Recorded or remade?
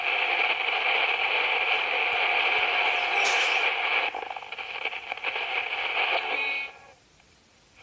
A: remade